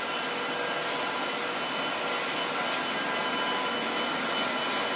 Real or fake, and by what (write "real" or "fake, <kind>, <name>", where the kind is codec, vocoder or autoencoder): real